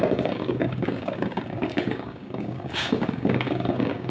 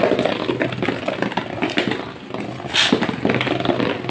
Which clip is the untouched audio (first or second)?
second